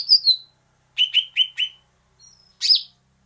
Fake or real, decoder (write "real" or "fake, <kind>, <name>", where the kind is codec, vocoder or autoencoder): real